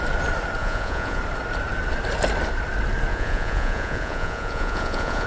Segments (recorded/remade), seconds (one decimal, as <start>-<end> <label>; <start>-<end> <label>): 0.0-0.6 recorded; 0.6-1.2 remade; 1.2-3.1 recorded; 3.1-5.3 remade